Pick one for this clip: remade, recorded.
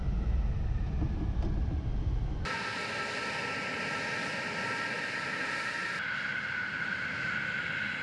recorded